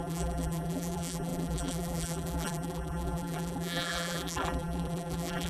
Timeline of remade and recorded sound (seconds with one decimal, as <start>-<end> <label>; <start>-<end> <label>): 0.0-5.5 remade